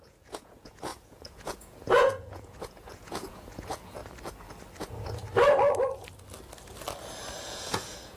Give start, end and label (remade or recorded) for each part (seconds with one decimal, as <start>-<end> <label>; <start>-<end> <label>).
0.0-4.0 remade; 4.0-4.8 recorded; 4.8-5.2 remade; 5.2-7.4 recorded; 7.4-8.2 remade